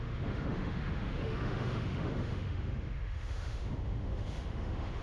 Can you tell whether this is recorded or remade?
remade